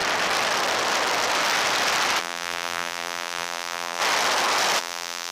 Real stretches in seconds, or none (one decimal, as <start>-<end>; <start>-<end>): 0.0-2.2; 4.0-4.8